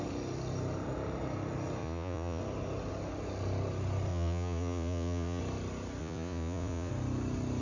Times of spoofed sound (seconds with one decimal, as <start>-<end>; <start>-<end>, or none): 1.8-2.4; 4.1-5.4; 6.0-6.9